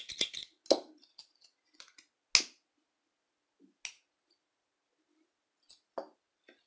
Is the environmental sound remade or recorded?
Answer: recorded